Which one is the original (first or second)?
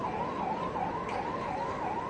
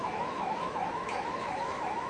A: first